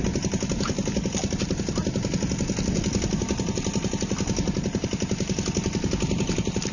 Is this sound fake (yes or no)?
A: no